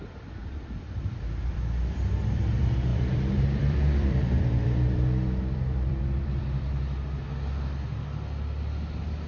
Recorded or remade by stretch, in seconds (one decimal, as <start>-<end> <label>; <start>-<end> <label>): 0.0-0.4 recorded; 0.4-1.6 remade; 1.6-2.9 recorded; 2.9-6.7 remade; 6.7-9.3 recorded